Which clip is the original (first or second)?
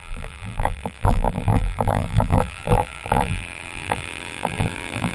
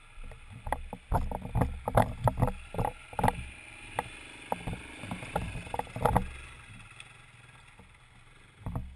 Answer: second